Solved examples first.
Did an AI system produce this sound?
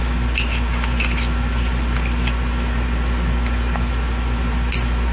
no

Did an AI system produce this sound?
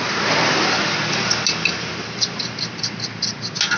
no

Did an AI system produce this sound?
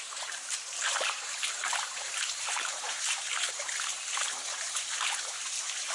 yes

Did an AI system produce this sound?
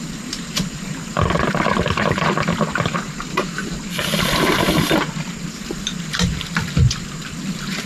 yes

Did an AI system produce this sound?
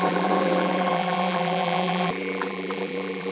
yes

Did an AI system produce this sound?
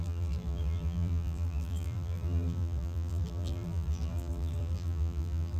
yes